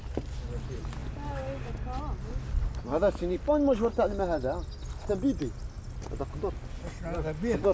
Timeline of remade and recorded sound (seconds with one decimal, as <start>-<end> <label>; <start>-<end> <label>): 0.0-7.7 recorded